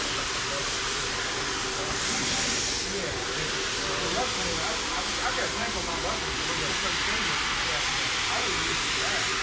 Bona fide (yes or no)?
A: yes